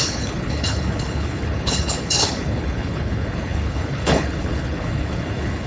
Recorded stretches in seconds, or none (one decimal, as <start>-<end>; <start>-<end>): none